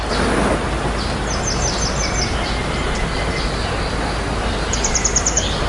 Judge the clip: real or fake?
real